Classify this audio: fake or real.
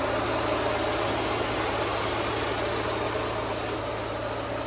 real